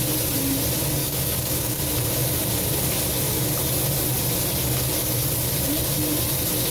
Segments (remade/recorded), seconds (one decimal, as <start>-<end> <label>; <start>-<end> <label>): 0.0-1.0 recorded; 1.0-1.8 remade; 1.8-6.7 recorded